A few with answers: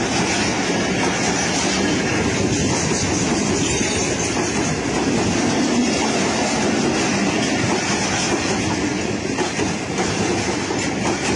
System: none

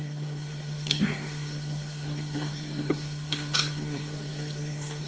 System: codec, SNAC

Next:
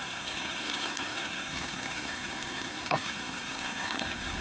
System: codec, SNAC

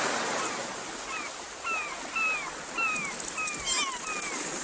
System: none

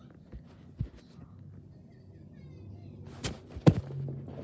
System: none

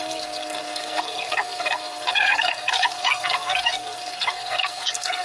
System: codec, SNAC